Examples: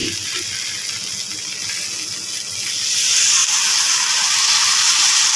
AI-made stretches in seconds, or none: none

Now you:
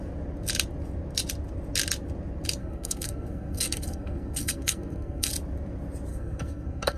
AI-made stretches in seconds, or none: 2.6-5.3; 6.1-7.0

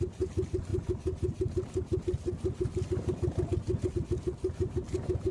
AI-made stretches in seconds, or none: none